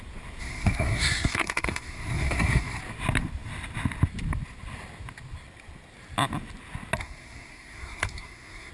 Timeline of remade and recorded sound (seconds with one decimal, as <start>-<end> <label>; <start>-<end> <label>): 0.0-0.4 recorded; 0.4-2.8 remade; 2.8-7.0 recorded; 7.0-8.7 remade